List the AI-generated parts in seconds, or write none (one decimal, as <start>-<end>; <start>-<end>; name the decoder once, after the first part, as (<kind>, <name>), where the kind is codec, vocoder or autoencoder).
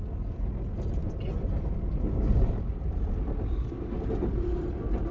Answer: none